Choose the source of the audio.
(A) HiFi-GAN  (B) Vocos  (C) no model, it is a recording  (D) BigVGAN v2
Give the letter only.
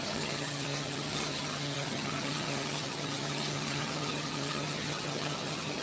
A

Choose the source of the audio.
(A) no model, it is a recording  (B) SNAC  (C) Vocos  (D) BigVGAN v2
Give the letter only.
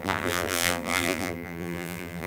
D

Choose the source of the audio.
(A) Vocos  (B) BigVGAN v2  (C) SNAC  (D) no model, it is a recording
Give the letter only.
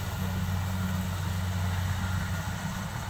D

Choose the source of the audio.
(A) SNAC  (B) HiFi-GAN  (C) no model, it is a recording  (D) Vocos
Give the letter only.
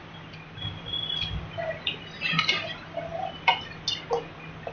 C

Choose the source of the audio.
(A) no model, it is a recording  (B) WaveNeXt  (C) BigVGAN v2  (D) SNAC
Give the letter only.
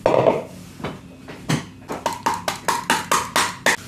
A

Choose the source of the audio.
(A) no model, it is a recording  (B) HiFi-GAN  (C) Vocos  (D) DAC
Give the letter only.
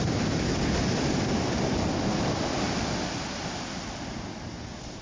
A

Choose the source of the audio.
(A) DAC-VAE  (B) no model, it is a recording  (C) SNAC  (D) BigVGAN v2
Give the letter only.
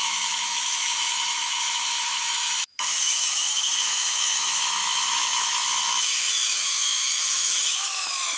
A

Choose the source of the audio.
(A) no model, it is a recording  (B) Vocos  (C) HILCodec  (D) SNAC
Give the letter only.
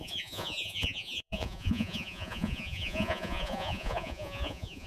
B